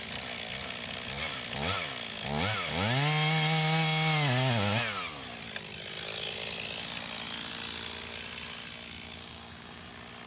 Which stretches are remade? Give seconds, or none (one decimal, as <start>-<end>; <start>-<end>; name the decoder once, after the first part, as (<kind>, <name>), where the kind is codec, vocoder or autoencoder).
9.2-9.9 (codec, DAC)